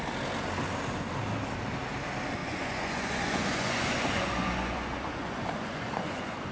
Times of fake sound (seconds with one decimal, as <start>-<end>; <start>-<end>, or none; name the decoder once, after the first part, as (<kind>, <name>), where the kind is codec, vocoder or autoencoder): 2.4-6.5 (vocoder, Vocos)